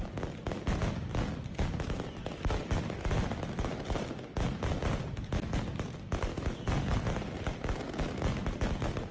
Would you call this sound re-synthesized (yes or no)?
no